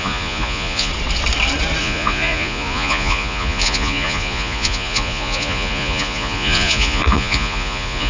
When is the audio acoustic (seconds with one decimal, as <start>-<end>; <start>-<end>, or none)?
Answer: 0.9-1.8